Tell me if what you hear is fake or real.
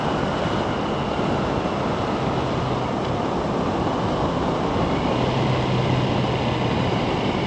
real